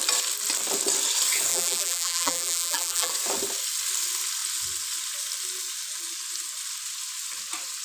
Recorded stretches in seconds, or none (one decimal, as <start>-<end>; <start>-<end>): 0.0-1.5; 3.1-7.8